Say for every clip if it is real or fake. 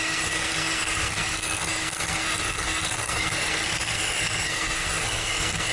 fake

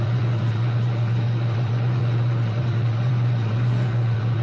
fake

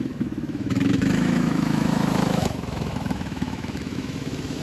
fake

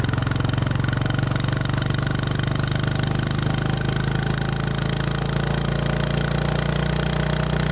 real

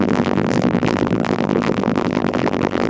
fake